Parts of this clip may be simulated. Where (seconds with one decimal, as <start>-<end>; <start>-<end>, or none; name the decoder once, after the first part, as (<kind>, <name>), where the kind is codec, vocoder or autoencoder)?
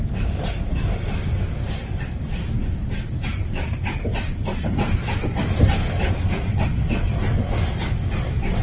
1.8-5.7 (vocoder, BigVGAN v2)